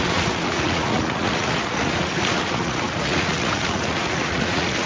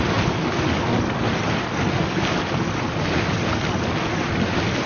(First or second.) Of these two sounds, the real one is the second